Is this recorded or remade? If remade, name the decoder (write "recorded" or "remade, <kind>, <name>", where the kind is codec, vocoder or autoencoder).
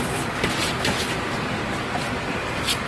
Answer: recorded